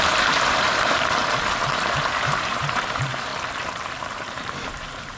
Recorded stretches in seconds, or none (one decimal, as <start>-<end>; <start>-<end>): 1.2-2.0; 3.3-4.1